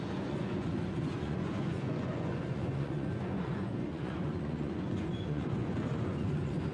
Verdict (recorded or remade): remade